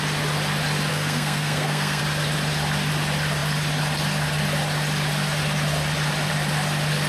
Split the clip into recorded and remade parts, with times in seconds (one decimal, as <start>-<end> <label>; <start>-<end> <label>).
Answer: 0.0-0.9 recorded; 0.9-2.0 remade; 2.0-7.1 recorded